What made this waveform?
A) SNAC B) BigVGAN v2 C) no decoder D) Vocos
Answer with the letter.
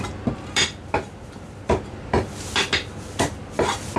B